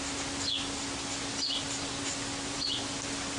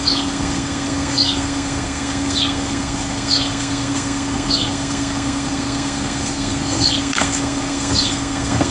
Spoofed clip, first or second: second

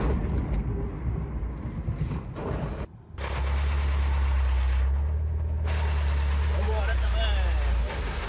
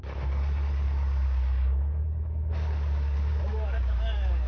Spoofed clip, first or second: second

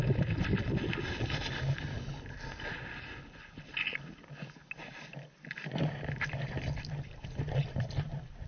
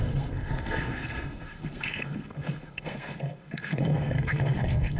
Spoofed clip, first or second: second